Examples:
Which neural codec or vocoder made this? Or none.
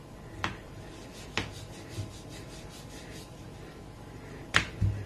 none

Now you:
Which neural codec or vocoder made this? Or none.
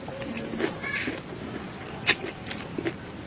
none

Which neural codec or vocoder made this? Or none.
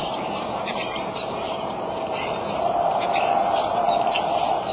vocoder, BigVGAN v2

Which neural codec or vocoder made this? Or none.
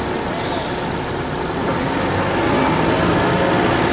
none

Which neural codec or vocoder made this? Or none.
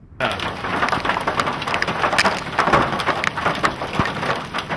none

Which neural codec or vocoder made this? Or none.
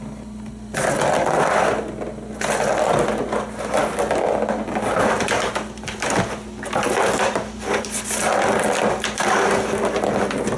none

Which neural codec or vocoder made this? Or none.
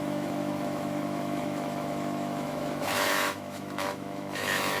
autoencoder, DAC-VAE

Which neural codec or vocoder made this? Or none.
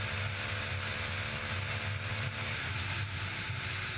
none